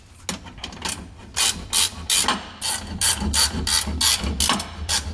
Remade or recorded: recorded